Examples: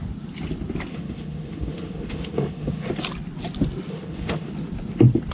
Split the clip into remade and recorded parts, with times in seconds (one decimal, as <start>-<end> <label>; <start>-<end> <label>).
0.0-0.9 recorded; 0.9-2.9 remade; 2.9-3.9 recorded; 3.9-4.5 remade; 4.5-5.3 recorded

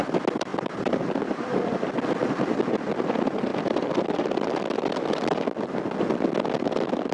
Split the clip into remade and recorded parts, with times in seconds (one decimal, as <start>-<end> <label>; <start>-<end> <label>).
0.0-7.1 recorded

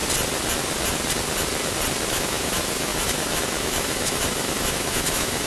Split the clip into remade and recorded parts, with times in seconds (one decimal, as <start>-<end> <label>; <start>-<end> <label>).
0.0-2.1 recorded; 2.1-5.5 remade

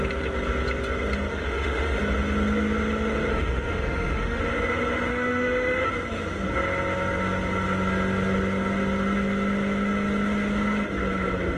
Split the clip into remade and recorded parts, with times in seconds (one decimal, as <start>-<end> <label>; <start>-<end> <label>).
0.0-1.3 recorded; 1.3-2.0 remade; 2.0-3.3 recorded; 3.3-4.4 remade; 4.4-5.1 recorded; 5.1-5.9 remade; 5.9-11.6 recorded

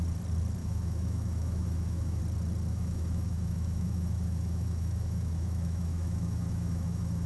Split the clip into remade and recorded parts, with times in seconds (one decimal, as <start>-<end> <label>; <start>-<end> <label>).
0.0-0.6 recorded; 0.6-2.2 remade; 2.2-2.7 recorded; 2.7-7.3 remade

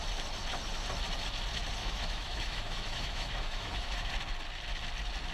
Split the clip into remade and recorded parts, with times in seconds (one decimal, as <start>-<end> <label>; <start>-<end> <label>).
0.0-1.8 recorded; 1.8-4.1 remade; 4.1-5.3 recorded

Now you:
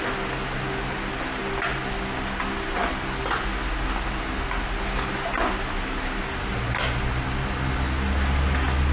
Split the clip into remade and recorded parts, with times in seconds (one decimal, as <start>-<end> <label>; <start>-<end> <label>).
0.0-8.9 recorded